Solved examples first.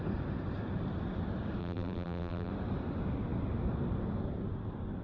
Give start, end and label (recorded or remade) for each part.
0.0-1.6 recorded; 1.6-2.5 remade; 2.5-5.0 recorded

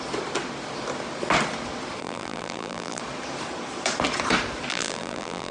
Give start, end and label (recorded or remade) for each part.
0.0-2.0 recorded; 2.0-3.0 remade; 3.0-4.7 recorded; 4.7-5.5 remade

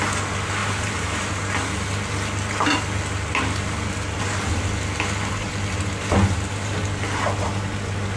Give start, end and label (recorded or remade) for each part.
0.0-0.6 recorded; 0.6-1.5 remade; 1.5-8.2 recorded